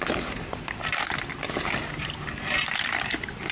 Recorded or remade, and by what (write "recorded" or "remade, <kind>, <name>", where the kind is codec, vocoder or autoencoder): recorded